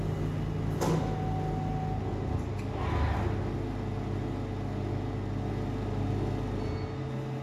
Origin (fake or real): real